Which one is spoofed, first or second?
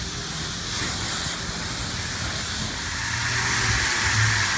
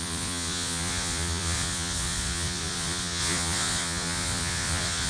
second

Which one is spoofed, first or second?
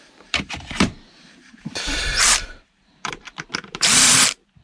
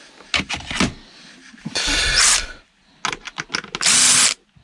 first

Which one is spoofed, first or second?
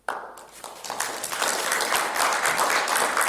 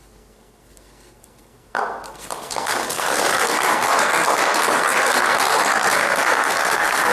second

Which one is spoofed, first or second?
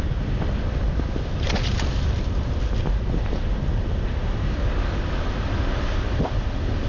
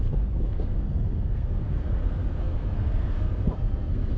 second